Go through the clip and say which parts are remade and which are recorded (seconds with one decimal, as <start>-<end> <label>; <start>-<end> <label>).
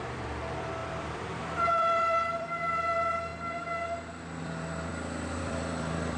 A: 0.0-3.3 remade; 3.3-4.4 recorded; 4.4-4.9 remade; 4.9-5.4 recorded; 5.4-6.2 remade